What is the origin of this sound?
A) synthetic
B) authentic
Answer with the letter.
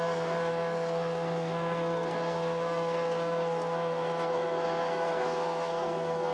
A